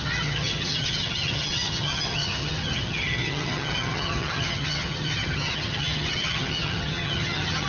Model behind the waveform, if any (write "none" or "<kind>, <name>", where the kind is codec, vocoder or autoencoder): vocoder, HiFi-GAN